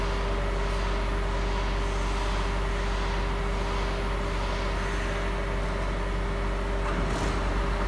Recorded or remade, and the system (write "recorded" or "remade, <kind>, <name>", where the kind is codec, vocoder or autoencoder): recorded